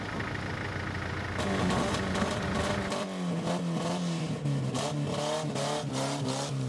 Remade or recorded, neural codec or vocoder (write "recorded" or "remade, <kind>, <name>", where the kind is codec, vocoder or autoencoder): recorded